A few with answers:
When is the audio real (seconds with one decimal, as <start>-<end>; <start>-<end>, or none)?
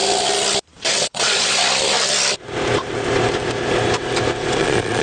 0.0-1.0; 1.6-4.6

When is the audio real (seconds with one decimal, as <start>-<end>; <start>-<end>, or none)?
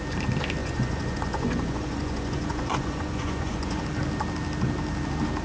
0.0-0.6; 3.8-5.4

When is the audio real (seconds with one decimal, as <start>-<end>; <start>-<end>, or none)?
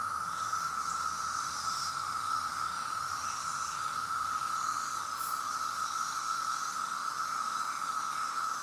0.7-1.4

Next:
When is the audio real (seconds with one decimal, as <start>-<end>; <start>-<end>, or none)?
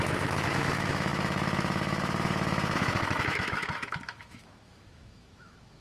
none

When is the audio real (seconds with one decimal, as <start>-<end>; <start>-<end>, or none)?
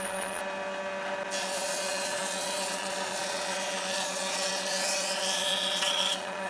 0.4-1.4